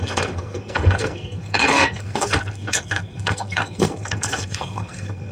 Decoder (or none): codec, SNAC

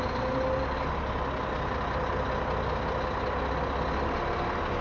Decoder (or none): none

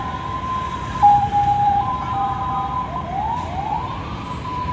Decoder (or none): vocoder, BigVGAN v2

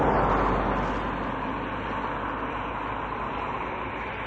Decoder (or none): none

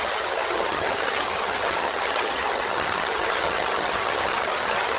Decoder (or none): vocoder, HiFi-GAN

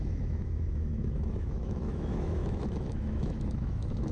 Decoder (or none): autoencoder, DAC-VAE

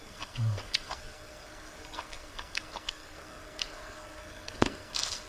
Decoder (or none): codec, SNAC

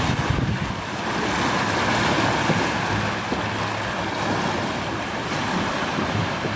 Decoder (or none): none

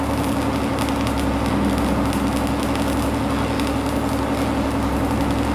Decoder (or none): none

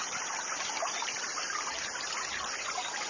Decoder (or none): none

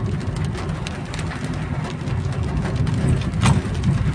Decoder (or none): none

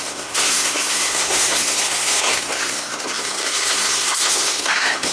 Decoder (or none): codec, SNAC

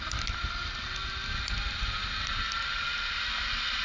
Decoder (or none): none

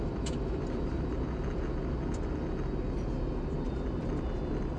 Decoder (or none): none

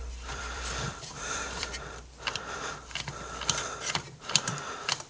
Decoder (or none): vocoder, BigVGAN v2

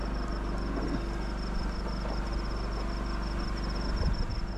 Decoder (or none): none